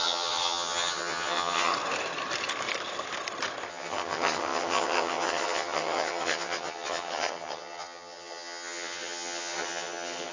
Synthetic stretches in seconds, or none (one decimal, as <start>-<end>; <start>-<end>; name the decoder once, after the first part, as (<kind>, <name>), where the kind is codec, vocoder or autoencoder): 0.0-1.7 (vocoder, HiFi-GAN); 3.7-10.3